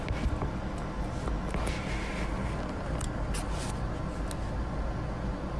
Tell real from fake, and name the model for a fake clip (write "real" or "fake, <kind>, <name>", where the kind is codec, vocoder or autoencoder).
real